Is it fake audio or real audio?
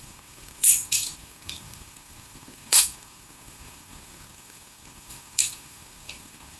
fake